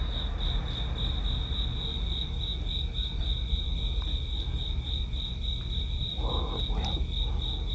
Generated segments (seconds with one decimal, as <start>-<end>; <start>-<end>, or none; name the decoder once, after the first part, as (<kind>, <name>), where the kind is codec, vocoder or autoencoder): none

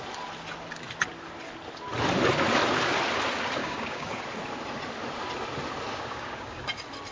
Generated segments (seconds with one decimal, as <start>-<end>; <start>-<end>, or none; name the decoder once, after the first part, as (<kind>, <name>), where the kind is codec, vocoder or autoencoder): 3.6-4.2 (codec, DAC); 5.9-6.6

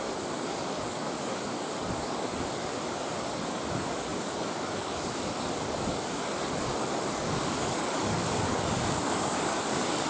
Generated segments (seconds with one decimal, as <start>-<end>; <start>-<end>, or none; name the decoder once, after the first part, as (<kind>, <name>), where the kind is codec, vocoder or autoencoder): 0.0-10.1 (codec, DAC)